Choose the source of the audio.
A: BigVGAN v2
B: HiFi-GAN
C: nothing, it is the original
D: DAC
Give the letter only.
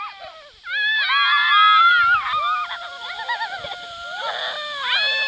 C